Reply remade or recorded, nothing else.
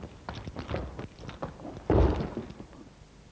recorded